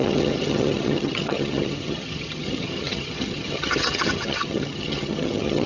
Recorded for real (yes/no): no